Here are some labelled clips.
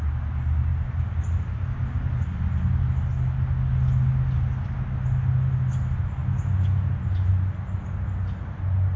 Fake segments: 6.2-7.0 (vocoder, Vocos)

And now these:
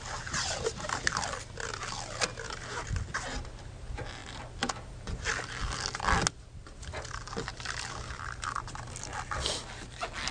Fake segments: none

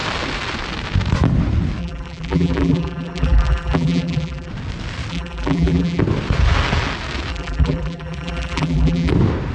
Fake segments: 1.8-4.5 (vocoder, BigVGAN v2); 5.1-6.0; 7.3-9.1

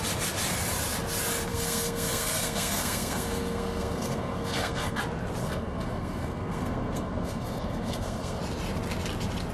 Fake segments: 1.5-5.0 (codec, SNAC); 5.4-8.4

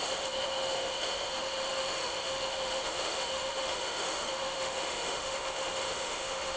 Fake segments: 0.0-6.6 (autoencoder, DAC-VAE)

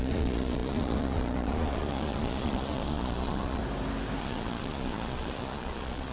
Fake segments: 0.0-3.6 (vocoder, Vocos); 4.2-6.1

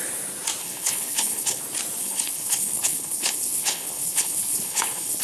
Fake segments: 0.6-1.6 (codec, HILCodec); 2.0-5.2